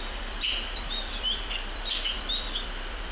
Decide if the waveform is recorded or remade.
recorded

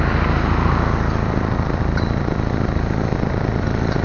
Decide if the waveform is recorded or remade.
recorded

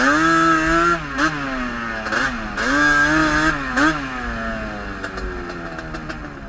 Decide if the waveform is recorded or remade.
recorded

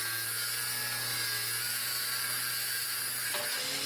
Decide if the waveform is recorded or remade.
recorded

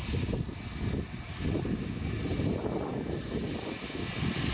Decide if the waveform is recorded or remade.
recorded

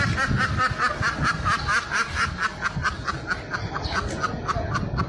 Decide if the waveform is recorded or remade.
recorded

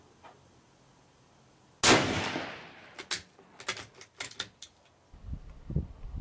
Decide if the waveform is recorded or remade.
recorded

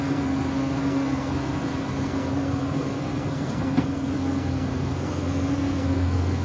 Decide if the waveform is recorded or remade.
remade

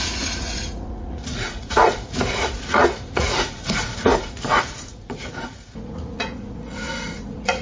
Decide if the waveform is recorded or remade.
remade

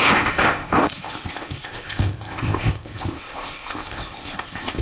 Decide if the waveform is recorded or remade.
remade